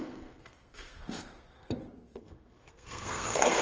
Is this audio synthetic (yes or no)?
yes